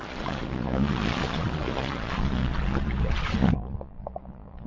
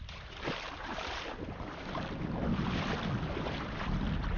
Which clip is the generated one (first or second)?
first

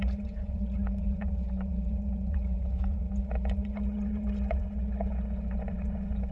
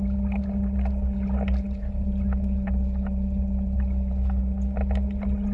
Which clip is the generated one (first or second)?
first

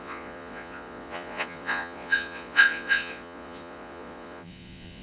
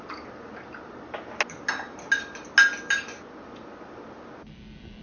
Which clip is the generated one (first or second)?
first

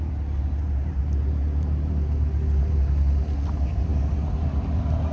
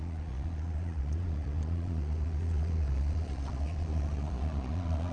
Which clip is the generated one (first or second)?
second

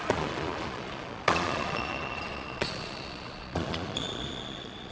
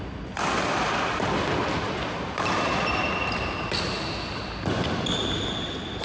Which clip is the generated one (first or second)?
first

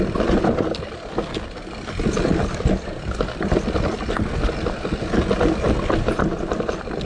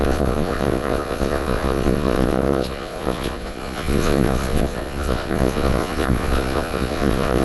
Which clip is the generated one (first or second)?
second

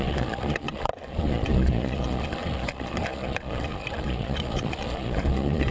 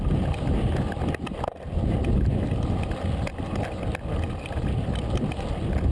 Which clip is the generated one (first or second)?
first